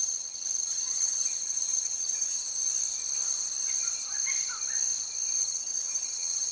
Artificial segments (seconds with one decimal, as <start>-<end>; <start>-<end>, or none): 0.0-2.4; 5.4-6.5